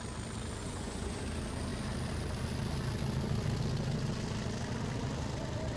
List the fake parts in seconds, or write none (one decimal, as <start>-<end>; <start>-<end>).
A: 0.6-1.2